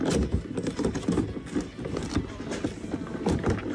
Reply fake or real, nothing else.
real